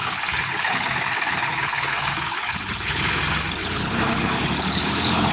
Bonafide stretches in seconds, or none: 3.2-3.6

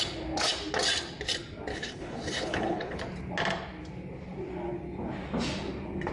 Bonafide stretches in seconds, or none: 0.0-1.7; 3.0-6.1

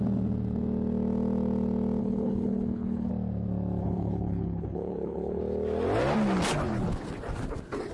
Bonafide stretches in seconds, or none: 0.0-2.0; 3.1-3.8; 5.4-7.9

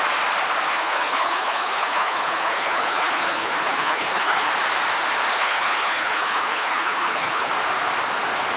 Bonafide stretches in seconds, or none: 0.0-0.7; 4.5-5.3; 7.5-8.6

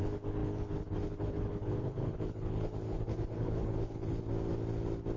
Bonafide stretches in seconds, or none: 4.3-5.2

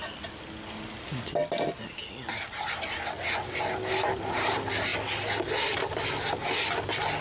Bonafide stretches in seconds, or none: 0.0-7.2

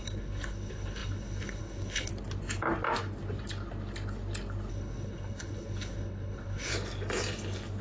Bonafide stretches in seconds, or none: 2.1-4.7; 6.7-7.8

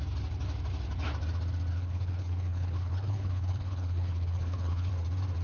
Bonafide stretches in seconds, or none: 0.0-1.7; 4.9-5.4